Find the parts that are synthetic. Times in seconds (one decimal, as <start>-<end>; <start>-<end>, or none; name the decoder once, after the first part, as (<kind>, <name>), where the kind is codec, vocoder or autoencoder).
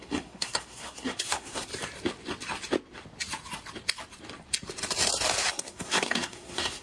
0.0-1.7 (codec, SNAC); 5.5-6.8